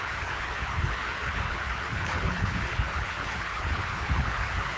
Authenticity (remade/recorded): remade